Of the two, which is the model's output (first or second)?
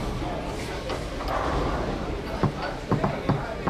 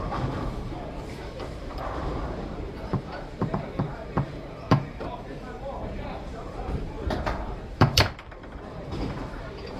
second